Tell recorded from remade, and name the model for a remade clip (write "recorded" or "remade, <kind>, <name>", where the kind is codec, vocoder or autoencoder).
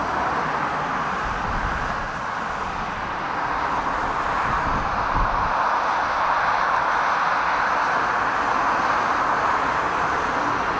recorded